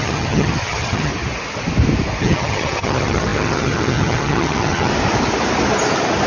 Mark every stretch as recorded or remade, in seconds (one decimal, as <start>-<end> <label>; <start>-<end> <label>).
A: 0.0-1.1 remade; 1.1-2.2 recorded; 2.2-4.9 remade; 4.9-6.3 recorded